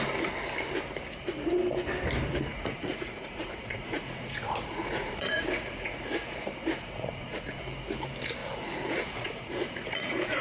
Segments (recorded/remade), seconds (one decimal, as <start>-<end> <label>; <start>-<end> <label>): 0.0-2.5 recorded; 2.5-7.6 remade; 7.6-8.4 recorded; 8.4-10.4 remade

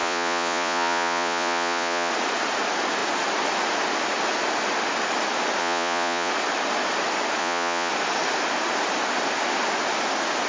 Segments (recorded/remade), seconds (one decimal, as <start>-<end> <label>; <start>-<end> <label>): 0.0-2.1 remade; 2.1-5.6 recorded; 5.6-6.3 remade; 6.3-7.4 recorded; 7.4-7.9 remade; 7.9-10.5 recorded

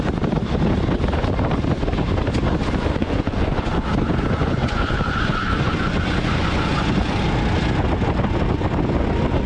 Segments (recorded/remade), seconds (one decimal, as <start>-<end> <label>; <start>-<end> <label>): 0.0-3.0 recorded; 3.0-3.7 remade; 3.7-4.4 recorded; 4.4-7.2 remade; 7.2-9.5 recorded

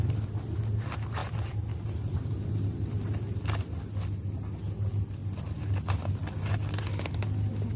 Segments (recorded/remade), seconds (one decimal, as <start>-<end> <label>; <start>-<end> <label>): 0.0-7.8 recorded

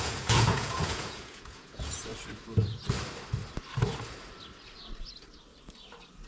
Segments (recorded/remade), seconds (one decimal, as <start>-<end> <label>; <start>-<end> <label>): 0.0-2.1 remade; 2.1-6.3 recorded